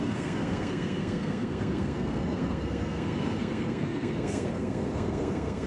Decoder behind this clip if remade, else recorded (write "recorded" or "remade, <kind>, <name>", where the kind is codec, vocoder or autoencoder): remade, codec, SNAC